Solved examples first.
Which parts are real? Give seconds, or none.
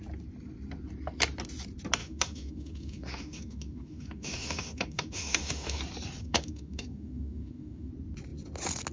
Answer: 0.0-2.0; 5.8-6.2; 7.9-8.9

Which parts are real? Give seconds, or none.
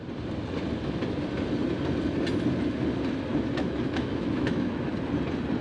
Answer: 0.0-3.3; 4.8-5.6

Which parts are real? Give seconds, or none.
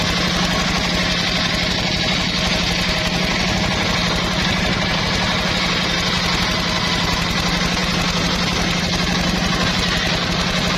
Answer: 0.0-10.8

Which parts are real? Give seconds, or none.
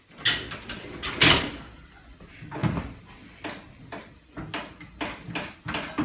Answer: 0.0-6.0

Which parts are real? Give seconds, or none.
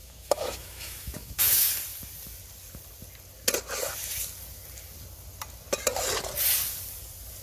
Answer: 1.7-7.4